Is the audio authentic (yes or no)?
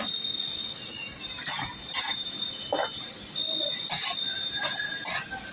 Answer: yes